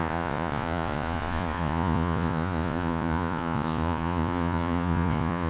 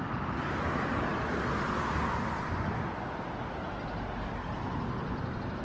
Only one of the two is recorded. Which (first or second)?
second